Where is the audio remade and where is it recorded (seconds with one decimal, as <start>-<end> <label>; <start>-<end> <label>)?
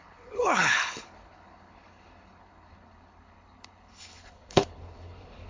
0.0-5.5 remade